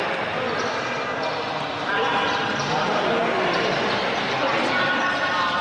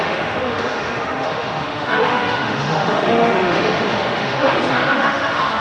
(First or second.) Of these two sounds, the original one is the first